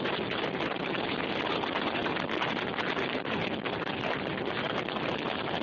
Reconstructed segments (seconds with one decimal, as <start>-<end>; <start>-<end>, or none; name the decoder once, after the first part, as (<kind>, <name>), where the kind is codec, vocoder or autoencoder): none